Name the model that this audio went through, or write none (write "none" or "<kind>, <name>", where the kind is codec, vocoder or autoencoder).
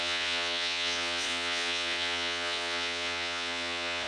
vocoder, Vocos